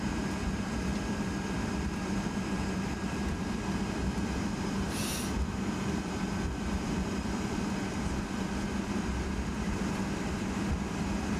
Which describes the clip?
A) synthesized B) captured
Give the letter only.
A